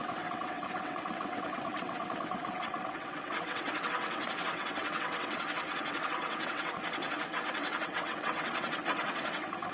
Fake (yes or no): yes